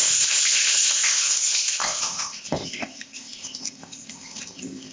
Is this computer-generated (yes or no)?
yes